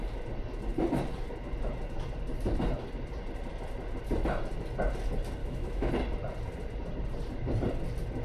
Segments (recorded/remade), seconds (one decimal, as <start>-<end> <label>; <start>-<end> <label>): 0.0-5.4 recorded; 5.4-5.9 remade; 5.9-8.2 recorded